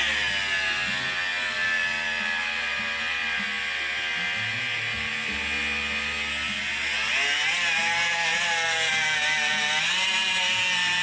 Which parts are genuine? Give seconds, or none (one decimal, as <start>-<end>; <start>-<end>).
0.0-11.0